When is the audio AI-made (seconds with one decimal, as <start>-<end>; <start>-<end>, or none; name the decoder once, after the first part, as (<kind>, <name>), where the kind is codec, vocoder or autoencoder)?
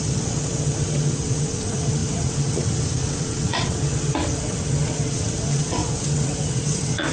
0.0-7.1 (vocoder, WaveNeXt)